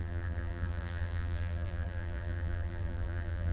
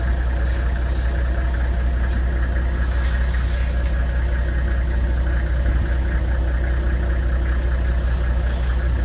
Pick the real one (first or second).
second